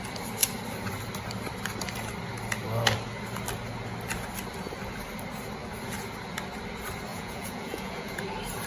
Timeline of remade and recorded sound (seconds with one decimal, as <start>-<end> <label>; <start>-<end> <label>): 0.0-7.1 recorded; 7.1-8.2 remade; 8.2-8.7 recorded